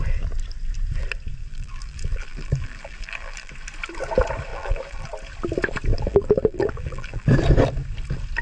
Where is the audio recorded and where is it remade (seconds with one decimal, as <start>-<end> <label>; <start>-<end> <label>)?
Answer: 0.0-1.4 recorded; 1.4-3.5 remade; 3.5-4.5 recorded; 4.5-5.1 remade; 5.1-5.9 recorded; 5.9-7.3 remade; 7.3-8.4 recorded